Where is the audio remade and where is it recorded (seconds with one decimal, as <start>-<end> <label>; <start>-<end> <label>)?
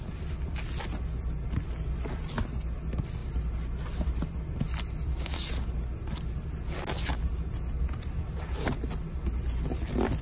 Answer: 0.0-10.2 recorded